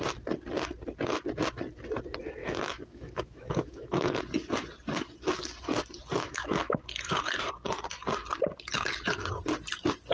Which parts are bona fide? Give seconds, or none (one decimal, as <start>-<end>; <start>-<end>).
0.0-2.4; 4.2-6.2; 6.8-10.1